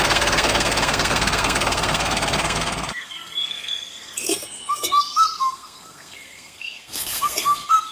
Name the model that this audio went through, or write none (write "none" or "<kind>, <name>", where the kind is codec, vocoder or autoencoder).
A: codec, SNAC